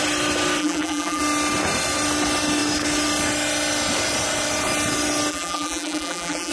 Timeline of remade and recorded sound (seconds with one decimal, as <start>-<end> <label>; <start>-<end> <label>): 0.0-0.6 recorded; 0.6-1.2 remade; 1.2-5.3 recorded; 5.3-6.5 remade